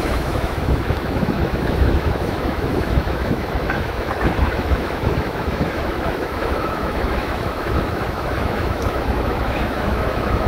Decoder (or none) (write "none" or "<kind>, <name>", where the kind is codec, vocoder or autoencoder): autoencoder, DAC-VAE